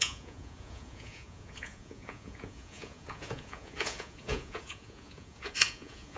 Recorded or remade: remade